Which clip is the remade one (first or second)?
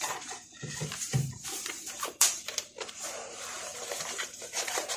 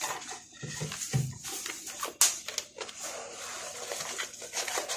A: first